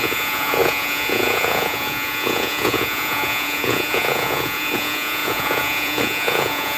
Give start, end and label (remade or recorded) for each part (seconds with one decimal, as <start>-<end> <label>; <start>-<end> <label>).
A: 0.0-6.8 remade